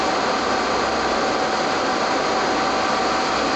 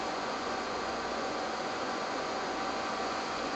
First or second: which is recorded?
first